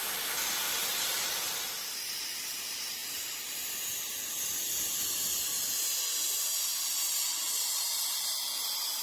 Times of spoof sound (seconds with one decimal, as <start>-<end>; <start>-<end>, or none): 3.0-3.8